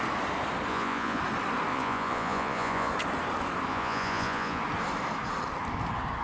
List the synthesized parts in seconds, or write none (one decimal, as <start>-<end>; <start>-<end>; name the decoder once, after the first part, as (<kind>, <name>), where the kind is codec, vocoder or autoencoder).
0.7-1.2 (vocoder, Vocos); 1.7-2.9; 3.7-4.6